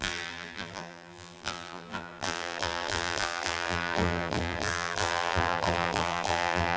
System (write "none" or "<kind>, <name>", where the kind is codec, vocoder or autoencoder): vocoder, BigVGAN v2